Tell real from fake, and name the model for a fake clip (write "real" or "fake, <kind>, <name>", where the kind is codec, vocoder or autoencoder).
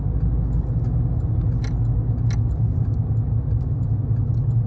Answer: real